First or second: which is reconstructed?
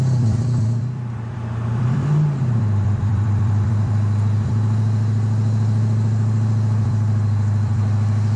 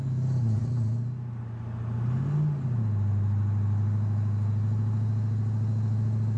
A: first